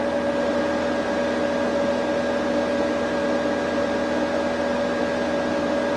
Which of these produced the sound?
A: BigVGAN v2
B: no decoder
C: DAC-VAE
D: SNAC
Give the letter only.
B